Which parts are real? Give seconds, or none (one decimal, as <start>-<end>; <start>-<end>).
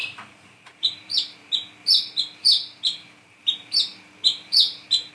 1.5-2.4